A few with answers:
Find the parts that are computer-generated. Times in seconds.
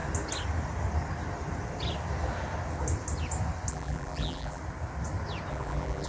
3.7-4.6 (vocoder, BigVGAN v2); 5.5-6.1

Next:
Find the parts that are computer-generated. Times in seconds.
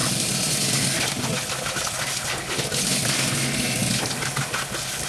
none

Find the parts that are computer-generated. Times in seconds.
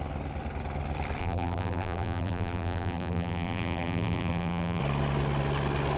1.2-4.8 (vocoder, BigVGAN v2)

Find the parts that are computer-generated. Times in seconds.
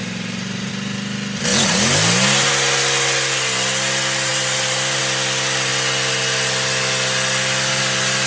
0.0-0.7 (vocoder, BigVGAN v2); 1.5-2.5; 4.3-5.0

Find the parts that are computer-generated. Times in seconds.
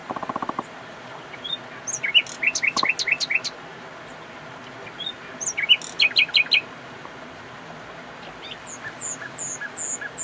0.0-1.4 (vocoder, BigVGAN v2)